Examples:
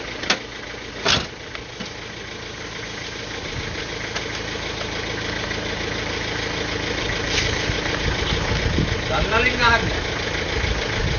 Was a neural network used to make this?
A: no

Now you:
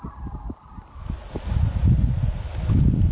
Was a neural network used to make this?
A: no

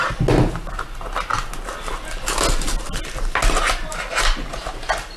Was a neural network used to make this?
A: no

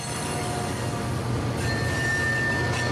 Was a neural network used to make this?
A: no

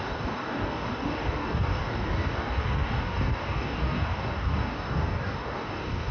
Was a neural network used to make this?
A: yes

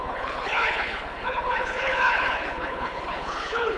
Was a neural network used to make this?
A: yes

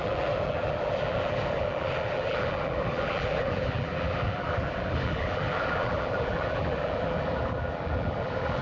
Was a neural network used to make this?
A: yes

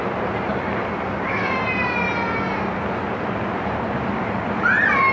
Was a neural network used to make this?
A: no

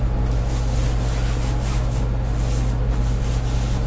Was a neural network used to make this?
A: no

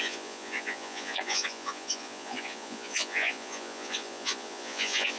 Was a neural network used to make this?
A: yes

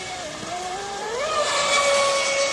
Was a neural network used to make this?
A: yes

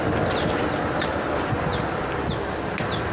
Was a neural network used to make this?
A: no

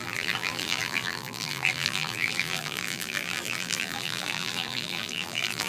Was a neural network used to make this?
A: yes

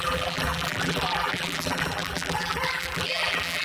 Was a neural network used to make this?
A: yes